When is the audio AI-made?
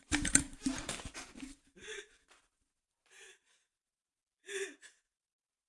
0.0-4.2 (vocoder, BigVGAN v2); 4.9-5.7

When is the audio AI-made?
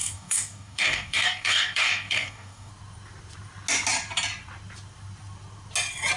0.0-2.7 (codec, DAC)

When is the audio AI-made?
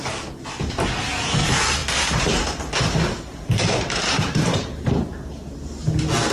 1.8-5.3 (vocoder, BigVGAN v2)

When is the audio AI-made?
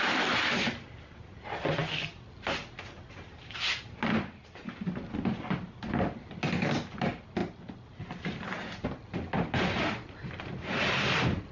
none